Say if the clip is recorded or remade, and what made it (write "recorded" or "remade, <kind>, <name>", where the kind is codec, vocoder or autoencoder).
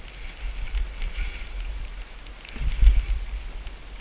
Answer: recorded